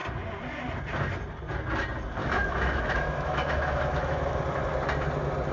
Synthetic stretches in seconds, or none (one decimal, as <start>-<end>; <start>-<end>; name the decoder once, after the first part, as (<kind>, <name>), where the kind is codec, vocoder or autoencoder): 2.2-4.4 (autoencoder, DAC-VAE)